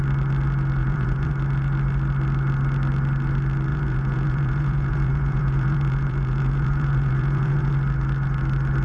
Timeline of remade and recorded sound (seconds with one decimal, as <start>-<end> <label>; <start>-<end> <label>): 0.0-0.8 recorded; 0.8-1.3 remade; 1.3-3.7 recorded; 3.7-7.7 remade; 7.7-8.8 recorded